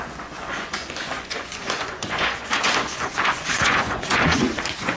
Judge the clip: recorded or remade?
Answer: remade